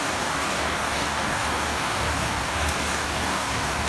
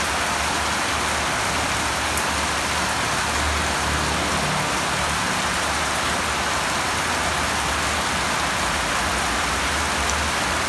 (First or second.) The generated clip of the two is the first